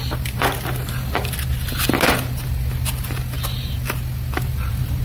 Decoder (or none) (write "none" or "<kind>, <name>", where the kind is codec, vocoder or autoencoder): none